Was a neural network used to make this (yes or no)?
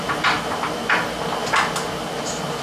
no